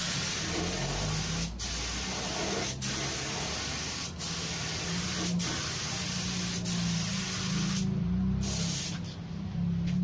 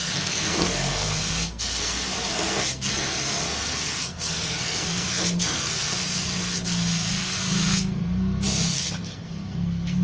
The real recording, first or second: first